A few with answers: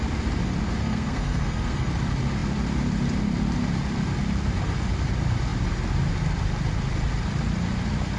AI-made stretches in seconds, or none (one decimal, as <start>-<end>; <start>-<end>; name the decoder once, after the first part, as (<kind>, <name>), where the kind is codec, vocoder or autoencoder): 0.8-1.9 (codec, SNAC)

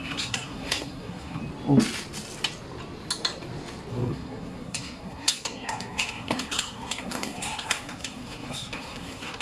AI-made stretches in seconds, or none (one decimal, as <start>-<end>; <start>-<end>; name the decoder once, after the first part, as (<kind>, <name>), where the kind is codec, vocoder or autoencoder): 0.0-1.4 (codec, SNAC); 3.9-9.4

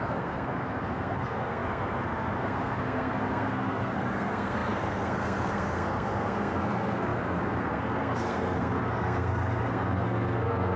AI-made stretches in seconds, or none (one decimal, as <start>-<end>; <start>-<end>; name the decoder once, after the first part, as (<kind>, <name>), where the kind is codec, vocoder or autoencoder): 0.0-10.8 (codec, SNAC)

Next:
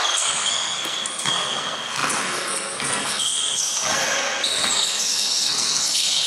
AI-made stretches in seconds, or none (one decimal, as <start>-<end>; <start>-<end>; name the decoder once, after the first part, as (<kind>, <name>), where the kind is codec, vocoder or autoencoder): 0.0-6.3 (codec, SNAC)

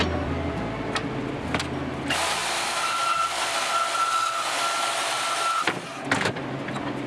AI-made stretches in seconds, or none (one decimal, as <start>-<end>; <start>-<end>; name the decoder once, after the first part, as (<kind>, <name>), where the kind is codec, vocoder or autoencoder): none